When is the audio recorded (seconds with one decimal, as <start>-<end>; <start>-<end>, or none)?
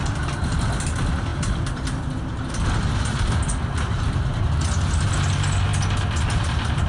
0.0-6.9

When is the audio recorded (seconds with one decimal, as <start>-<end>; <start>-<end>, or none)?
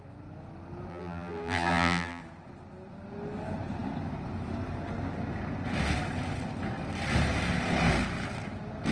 0.0-0.9; 2.2-8.9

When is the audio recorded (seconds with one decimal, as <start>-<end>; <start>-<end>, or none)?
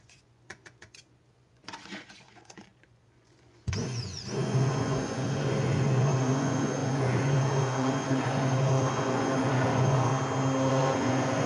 10.1-10.7